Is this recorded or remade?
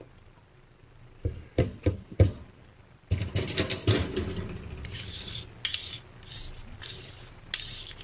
recorded